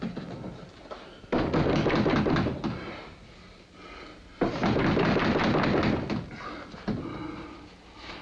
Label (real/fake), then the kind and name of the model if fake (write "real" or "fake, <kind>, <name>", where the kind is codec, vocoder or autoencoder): real